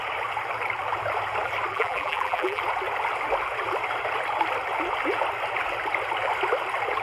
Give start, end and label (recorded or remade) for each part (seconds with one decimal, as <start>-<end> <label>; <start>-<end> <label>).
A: 0.0-1.7 recorded; 1.7-2.6 remade; 2.6-7.0 recorded